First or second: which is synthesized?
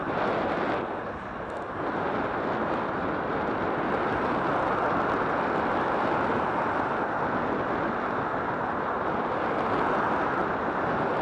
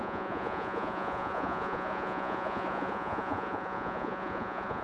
second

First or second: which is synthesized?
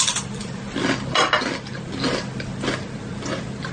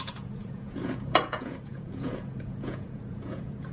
second